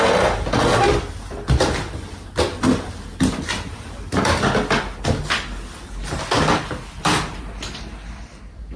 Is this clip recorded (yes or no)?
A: yes